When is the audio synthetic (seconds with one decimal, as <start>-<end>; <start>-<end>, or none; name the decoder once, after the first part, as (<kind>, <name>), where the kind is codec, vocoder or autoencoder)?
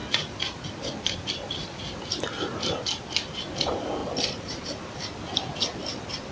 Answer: none